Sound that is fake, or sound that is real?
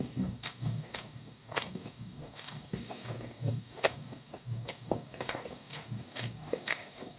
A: fake